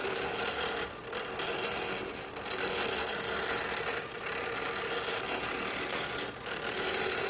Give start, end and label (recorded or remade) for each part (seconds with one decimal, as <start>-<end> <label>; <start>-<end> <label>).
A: 0.0-7.3 recorded